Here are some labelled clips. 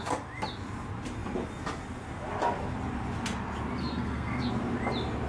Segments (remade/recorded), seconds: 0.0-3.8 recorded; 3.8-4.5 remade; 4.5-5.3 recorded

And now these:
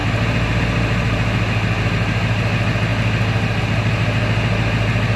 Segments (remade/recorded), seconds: 0.0-5.2 recorded

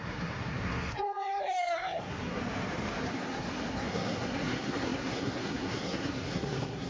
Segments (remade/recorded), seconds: 0.0-2.4 remade; 2.4-3.1 recorded; 3.1-6.9 remade

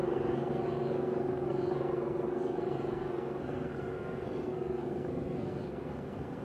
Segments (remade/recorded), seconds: 0.0-6.4 remade